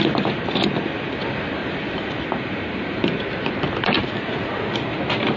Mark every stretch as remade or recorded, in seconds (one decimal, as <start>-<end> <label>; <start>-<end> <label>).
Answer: 0.0-1.6 recorded; 1.6-4.8 remade; 4.8-5.4 recorded